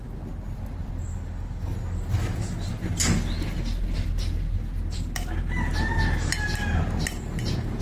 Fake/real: real